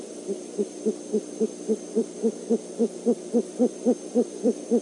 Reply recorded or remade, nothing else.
remade